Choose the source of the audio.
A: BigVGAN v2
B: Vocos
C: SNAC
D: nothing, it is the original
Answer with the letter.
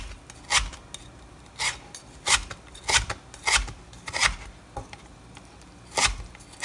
D